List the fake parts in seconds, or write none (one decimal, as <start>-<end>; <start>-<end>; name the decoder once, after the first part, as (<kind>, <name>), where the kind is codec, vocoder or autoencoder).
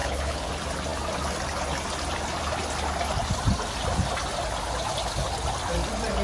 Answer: 0.0-0.5 (codec, HILCodec)